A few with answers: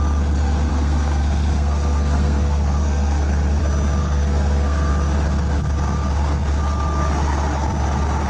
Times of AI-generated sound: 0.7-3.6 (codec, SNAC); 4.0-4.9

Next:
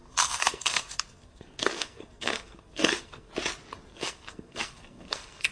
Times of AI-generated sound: 0.0-3.3 (codec, SNAC); 3.9-5.5